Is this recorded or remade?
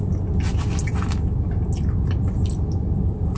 recorded